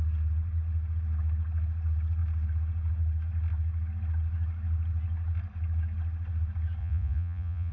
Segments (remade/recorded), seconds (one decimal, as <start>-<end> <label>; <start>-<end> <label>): 0.0-6.8 recorded; 6.8-7.7 remade